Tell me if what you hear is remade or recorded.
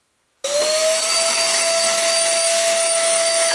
remade